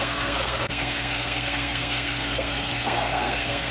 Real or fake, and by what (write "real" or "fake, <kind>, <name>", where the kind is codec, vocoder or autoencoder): fake, codec, SNAC